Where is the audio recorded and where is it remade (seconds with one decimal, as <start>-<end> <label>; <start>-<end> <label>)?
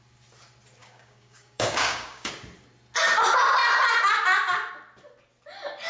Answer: 0.0-0.8 recorded; 0.8-2.3 remade; 2.3-5.9 recorded